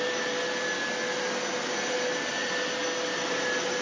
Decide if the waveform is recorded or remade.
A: recorded